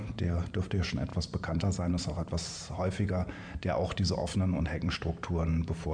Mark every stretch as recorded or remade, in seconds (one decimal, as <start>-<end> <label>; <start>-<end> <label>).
0.0-5.9 remade